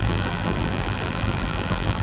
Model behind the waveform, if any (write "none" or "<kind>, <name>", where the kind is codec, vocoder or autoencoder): vocoder, BigVGAN v2